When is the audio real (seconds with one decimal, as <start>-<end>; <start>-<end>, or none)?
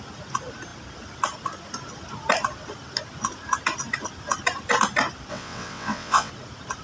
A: 0.0-5.3; 6.3-6.8